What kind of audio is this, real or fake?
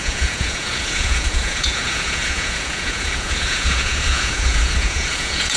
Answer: fake